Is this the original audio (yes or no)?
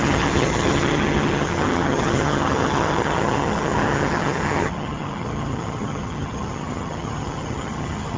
no